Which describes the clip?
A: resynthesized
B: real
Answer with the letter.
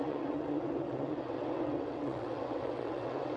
A